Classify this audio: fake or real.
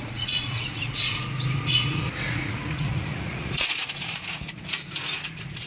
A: fake